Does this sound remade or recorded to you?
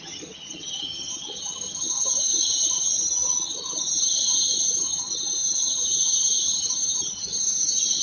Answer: remade